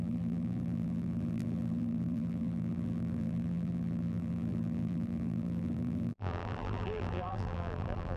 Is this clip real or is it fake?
fake